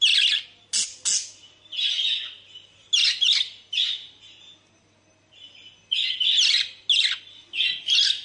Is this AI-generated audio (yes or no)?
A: no